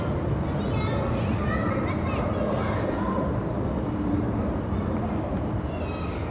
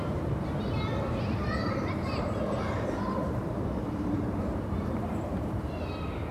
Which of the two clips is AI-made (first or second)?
second